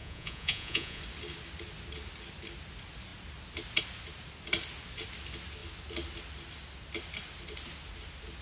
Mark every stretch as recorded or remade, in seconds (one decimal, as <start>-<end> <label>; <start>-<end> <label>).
0.0-1.0 remade; 1.0-8.4 recorded

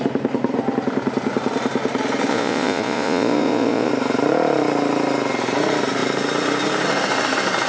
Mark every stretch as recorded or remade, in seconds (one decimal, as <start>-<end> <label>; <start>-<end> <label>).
0.0-2.3 recorded; 2.3-3.9 remade; 3.9-7.7 recorded

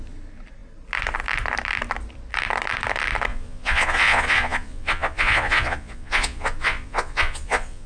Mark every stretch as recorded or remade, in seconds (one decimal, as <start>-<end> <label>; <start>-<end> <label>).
0.0-3.3 recorded; 3.3-7.9 remade

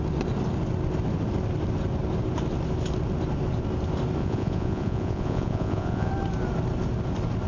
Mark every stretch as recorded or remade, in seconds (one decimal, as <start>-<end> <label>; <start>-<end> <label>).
0.0-4.2 recorded; 4.2-6.1 remade; 6.1-7.5 recorded

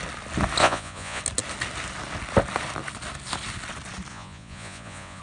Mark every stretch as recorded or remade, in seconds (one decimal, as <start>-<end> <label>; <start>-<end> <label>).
0.0-0.6 recorded; 0.6-1.2 remade; 1.2-4.1 recorded; 4.1-5.2 remade

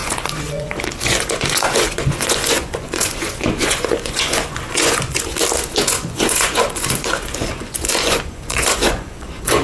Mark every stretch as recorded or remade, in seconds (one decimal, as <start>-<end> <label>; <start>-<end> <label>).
0.0-5.3 remade; 5.3-5.8 recorded; 5.8-9.6 remade

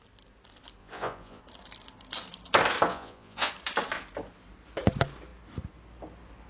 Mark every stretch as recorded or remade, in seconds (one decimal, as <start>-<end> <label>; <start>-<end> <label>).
0.0-0.8 recorded; 0.8-1.4 remade; 1.4-2.9 recorded; 2.9-3.5 remade; 3.5-6.5 recorded